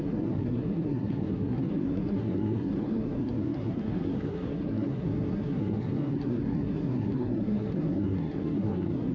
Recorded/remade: remade